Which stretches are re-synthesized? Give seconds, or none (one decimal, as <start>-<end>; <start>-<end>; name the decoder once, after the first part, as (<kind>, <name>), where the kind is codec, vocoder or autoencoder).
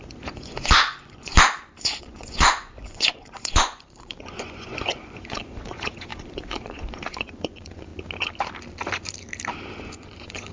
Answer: 0.0-1.3 (vocoder, Vocos); 1.8-7.9; 9.8-10.5